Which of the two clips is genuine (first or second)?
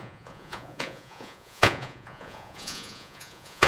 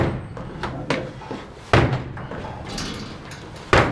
second